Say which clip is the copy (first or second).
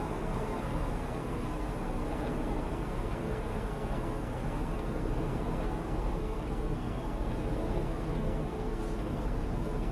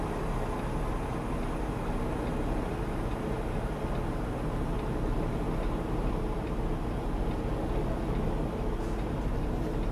first